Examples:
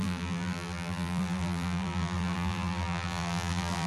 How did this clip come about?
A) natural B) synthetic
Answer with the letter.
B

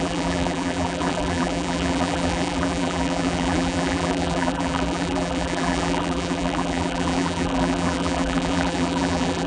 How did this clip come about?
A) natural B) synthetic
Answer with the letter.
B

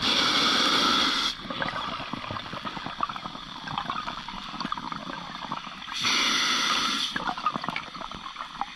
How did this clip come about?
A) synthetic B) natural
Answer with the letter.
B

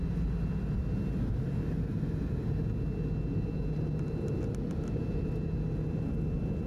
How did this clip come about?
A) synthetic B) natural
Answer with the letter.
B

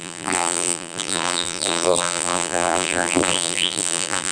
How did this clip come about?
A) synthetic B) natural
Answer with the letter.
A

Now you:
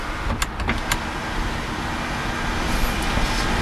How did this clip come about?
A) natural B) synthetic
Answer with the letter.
A